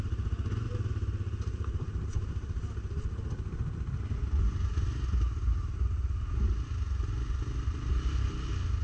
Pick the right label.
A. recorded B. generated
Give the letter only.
A